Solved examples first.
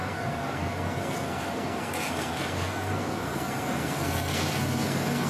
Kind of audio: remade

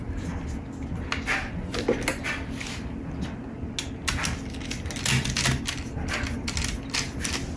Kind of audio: recorded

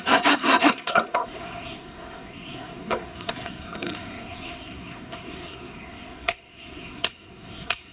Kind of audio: remade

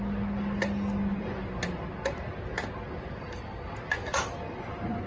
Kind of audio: recorded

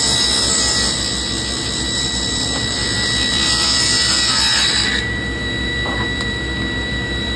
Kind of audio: remade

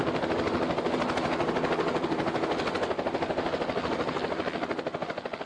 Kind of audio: recorded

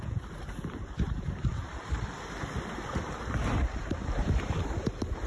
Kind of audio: remade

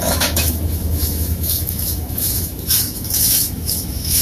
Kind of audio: remade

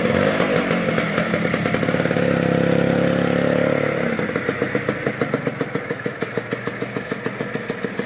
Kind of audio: recorded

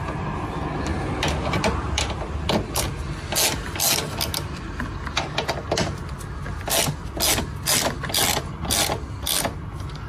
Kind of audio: recorded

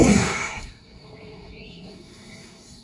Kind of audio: remade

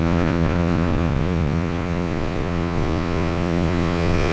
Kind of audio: remade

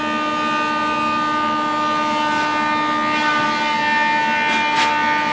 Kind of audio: recorded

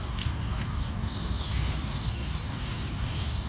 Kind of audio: remade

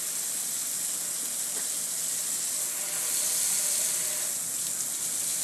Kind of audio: recorded